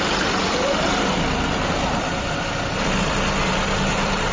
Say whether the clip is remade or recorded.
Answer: remade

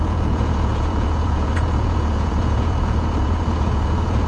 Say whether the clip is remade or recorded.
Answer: remade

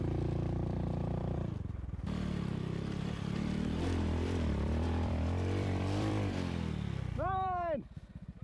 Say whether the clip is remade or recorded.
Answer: remade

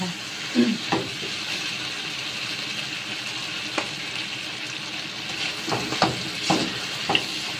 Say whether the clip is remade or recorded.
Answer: recorded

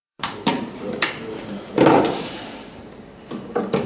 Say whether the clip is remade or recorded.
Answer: remade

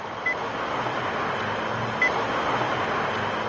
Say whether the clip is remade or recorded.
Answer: recorded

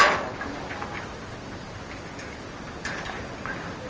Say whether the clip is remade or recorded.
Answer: recorded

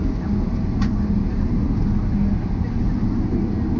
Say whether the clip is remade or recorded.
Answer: recorded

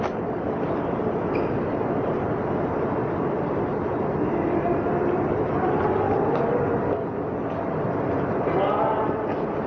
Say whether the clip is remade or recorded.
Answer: recorded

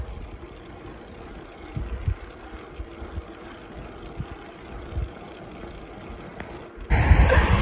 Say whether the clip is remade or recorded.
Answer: recorded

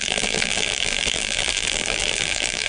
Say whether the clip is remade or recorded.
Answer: remade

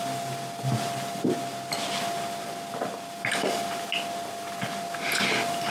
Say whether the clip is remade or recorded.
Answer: recorded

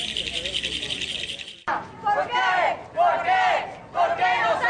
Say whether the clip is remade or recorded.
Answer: recorded